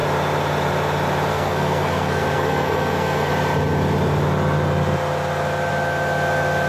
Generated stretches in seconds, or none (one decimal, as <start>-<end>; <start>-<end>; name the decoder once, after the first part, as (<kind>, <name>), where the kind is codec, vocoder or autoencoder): 1.3-3.3 (codec, SNAC)